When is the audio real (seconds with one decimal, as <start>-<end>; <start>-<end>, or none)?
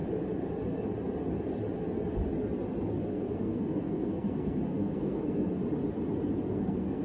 0.0-3.1; 5.6-6.5